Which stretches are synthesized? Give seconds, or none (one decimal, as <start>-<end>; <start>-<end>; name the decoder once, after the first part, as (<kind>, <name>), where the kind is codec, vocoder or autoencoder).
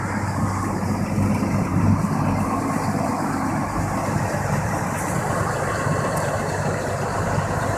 none